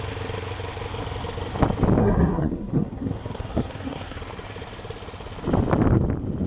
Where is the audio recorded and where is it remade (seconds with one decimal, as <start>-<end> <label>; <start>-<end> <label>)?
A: 0.0-2.0 recorded; 2.0-4.2 remade; 4.2-6.5 recorded